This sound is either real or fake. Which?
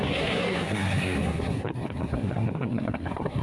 fake